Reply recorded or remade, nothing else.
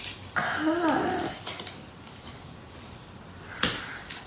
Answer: recorded